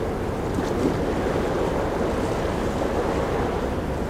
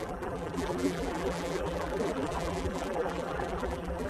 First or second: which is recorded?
first